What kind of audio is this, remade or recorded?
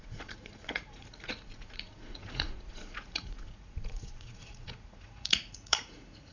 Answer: remade